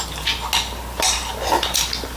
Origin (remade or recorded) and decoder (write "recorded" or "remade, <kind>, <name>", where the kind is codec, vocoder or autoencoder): recorded